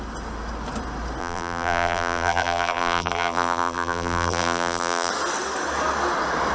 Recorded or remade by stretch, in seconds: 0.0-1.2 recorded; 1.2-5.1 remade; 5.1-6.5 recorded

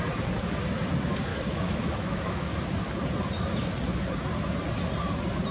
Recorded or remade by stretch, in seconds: 0.0-1.3 recorded; 1.3-2.5 remade; 2.5-5.5 recorded

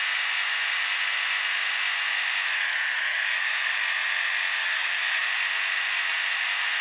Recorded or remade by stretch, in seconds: 0.0-3.1 recorded; 3.1-3.7 remade; 3.7-4.6 recorded; 4.6-5.2 remade; 5.2-6.8 recorded

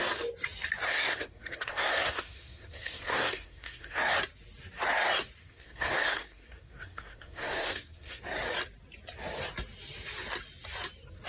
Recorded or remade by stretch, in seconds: 0.0-0.9 recorded; 0.9-4.0 remade; 4.0-5.4 recorded; 5.4-8.2 remade; 8.2-11.3 recorded

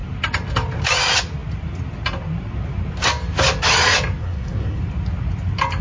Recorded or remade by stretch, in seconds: 0.0-4.2 recorded; 4.2-4.8 remade; 4.8-5.8 recorded

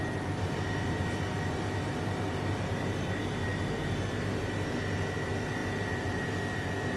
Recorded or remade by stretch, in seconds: 0.0-5.6 recorded; 5.6-6.2 remade; 6.2-7.0 recorded

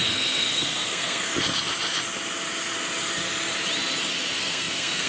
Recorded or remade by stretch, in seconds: 0.0-1.3 remade; 1.3-4.4 recorded; 4.4-5.1 remade